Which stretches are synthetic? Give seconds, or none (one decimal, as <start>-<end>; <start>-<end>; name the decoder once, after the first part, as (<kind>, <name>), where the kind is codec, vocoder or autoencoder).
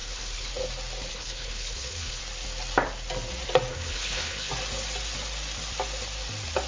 0.0-0.5 (codec, HILCodec); 1.1-2.2; 3.7-4.5